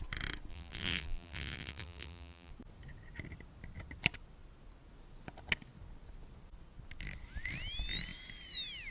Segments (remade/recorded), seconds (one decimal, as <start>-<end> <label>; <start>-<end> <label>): 0.0-0.5 recorded; 0.5-2.5 remade; 2.5-8.9 recorded